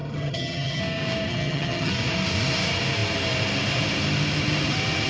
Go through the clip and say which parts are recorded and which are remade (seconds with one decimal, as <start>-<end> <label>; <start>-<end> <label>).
0.0-0.8 remade; 0.8-1.3 recorded; 1.3-1.9 remade; 1.9-5.1 recorded